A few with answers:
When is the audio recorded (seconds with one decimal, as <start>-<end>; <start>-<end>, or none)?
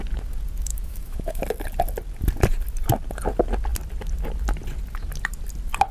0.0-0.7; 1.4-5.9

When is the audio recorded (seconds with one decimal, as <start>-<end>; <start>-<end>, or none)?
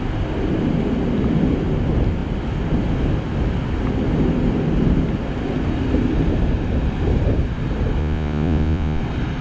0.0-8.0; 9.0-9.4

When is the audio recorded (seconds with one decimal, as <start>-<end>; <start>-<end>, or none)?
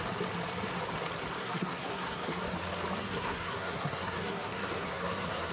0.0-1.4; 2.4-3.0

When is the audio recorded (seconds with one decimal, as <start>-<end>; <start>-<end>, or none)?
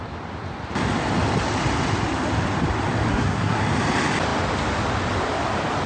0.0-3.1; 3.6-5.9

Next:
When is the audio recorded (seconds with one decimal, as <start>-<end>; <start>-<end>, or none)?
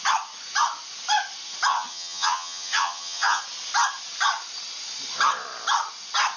0.0-1.7; 3.4-6.4